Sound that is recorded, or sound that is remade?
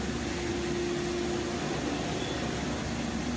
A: recorded